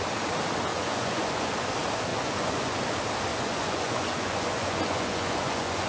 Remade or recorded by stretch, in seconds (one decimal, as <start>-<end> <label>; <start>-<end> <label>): 0.0-0.7 recorded; 0.7-1.5 remade; 1.5-2.1 recorded; 2.1-2.8 remade; 2.8-3.3 recorded; 3.3-5.9 remade